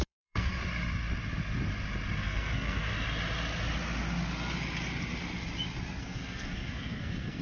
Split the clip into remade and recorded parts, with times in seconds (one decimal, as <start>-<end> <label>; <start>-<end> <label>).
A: 0.0-0.6 remade; 0.6-2.2 recorded; 2.2-2.9 remade; 2.9-6.0 recorded; 6.0-7.4 remade